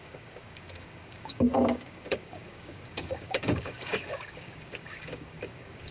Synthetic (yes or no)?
yes